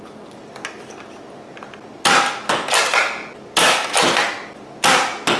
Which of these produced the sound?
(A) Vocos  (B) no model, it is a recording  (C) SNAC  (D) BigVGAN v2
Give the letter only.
B